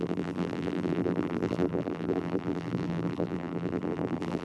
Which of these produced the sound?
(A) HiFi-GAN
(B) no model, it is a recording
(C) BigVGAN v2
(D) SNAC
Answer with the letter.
C